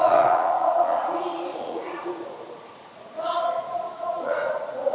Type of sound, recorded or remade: remade